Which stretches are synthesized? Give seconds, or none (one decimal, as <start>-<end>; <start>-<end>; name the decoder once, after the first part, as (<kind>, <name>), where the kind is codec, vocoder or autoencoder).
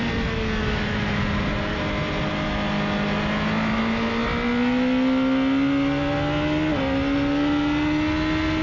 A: 0.6-1.2 (autoencoder, DAC-VAE)